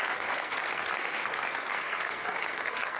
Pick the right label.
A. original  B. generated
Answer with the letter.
B